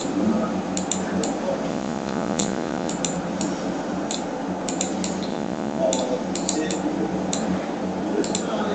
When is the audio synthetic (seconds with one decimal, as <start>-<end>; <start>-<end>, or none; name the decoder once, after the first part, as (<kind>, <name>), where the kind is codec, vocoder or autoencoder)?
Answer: 1.7-2.9 (vocoder, Vocos); 5.3-5.8